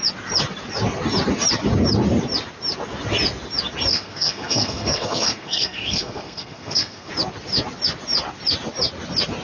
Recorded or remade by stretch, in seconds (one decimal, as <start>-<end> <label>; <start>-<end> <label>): 0.0-3.9 recorded; 3.9-7.1 remade; 7.1-9.4 recorded